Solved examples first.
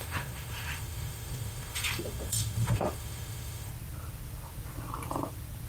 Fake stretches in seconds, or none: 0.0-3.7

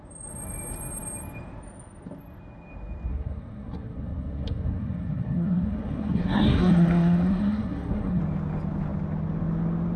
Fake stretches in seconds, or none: 3.1-8.2

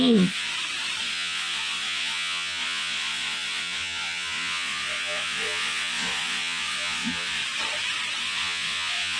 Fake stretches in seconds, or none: 0.0-0.5; 1.0-7.4; 8.2-9.2

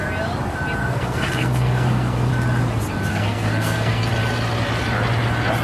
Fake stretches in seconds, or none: 0.8-2.3; 3.1-4.1

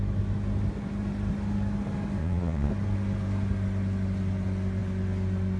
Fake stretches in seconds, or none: 2.2-2.7

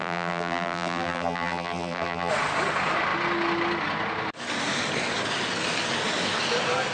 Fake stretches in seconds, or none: 0.0-2.3